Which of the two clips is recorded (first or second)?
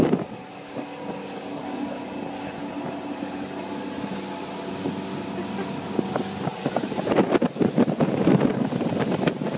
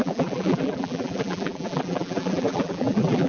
first